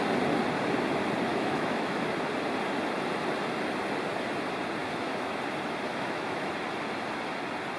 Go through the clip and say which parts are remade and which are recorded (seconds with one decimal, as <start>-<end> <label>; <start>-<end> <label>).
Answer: 0.0-1.3 recorded; 1.3-2.1 remade; 2.1-4.8 recorded; 4.8-5.4 remade; 5.4-5.9 recorded; 5.9-6.5 remade; 6.5-7.8 recorded